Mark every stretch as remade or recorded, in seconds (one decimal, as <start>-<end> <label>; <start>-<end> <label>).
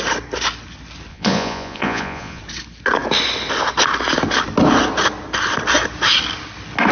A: 0.0-1.1 recorded; 1.1-2.4 remade; 2.4-6.9 recorded